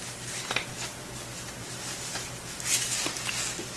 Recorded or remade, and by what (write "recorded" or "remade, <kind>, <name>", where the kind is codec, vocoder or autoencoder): recorded